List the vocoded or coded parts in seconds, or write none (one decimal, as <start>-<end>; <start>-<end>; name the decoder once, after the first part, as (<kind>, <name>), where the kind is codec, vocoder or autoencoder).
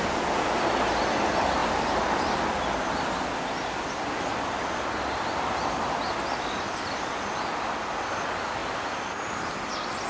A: 8.6-9.3 (vocoder, BigVGAN v2)